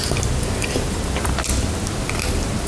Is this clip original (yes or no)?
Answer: yes